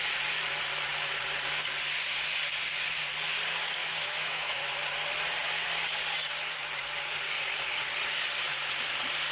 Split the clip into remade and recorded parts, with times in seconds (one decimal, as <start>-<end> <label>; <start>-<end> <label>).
0.0-3.8 recorded; 3.8-4.6 remade; 4.6-9.3 recorded